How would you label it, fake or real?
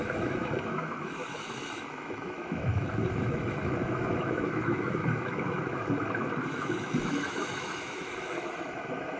fake